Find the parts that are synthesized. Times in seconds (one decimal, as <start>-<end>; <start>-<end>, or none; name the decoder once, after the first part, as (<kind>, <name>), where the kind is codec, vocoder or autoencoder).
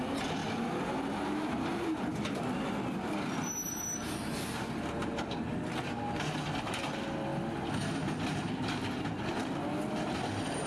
none